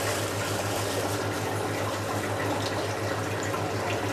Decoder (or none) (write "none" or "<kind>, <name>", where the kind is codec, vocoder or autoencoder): none